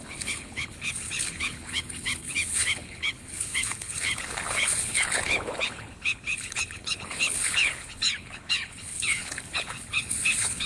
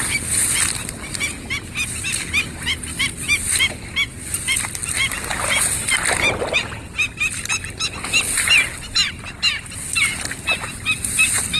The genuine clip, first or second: second